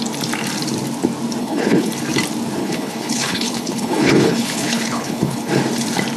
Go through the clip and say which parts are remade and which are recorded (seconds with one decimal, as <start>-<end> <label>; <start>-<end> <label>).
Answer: 0.0-1.4 recorded; 1.4-1.9 remade; 1.9-2.6 recorded; 2.6-5.5 remade; 5.5-6.2 recorded